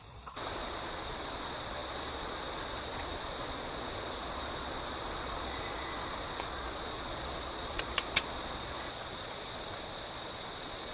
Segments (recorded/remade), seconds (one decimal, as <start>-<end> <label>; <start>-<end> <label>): 0.0-10.9 remade